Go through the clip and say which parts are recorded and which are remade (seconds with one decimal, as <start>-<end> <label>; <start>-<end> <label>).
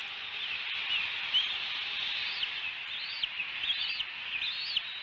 0.0-5.0 recorded